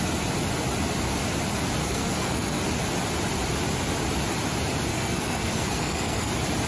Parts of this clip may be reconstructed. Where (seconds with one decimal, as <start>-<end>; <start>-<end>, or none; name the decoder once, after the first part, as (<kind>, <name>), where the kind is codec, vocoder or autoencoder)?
1.8-2.6 (codec, SNAC); 4.9-6.3